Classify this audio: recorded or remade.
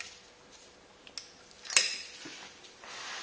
recorded